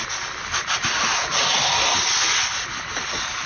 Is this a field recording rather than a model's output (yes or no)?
yes